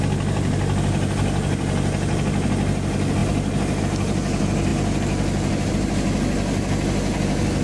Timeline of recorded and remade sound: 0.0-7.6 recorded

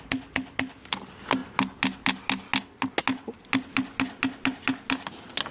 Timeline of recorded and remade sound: 0.0-5.5 recorded

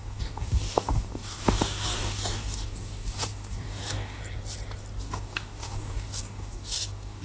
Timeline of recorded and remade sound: 0.0-4.2 remade; 4.2-5.0 recorded; 5.0-7.2 remade

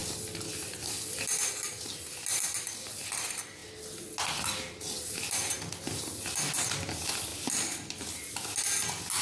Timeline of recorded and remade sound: 0.0-9.2 recorded

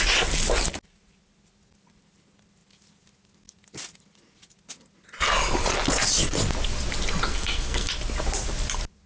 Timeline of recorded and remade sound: 0.0-7.3 recorded; 7.3-7.9 remade; 7.9-9.1 recorded

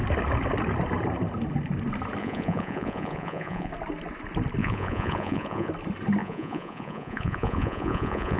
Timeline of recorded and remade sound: 0.0-2.2 recorded; 2.2-3.7 remade; 3.7-4.6 recorded; 4.6-5.7 remade; 5.7-6.2 recorded; 6.2-8.4 remade

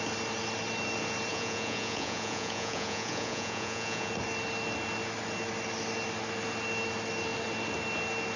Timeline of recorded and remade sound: 0.0-1.3 recorded; 1.3-4.1 remade; 4.1-8.4 recorded